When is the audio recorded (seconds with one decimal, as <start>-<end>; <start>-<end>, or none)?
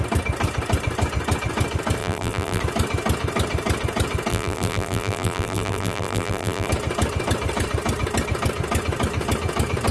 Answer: 0.0-2.0; 2.6-4.3; 6.7-9.9